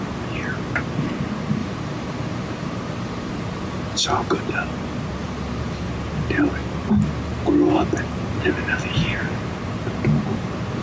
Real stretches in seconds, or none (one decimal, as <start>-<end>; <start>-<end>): 0.0-1.6; 4.4-5.2; 5.9-10.8